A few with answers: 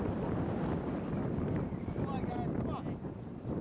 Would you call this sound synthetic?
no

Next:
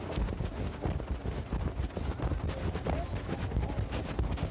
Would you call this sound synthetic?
no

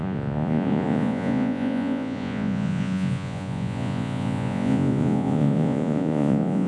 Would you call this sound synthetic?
yes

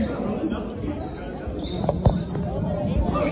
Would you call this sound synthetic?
no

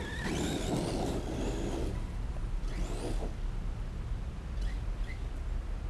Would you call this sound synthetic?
no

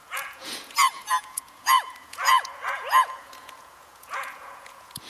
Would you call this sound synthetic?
yes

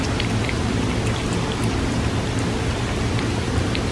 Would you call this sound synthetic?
no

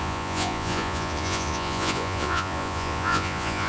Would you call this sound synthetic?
yes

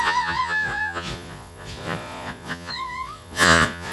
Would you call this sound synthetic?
yes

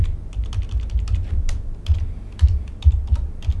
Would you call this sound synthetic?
no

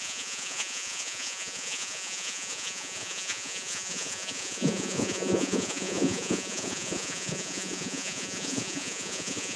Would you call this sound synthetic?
yes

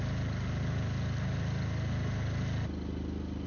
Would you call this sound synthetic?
no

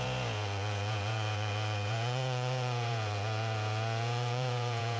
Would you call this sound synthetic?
yes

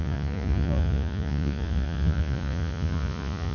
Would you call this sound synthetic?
yes